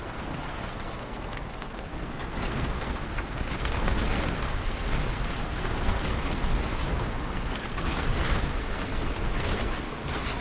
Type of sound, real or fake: fake